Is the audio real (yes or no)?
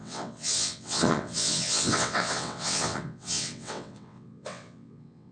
no